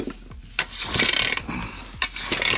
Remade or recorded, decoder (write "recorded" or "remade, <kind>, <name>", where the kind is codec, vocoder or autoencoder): recorded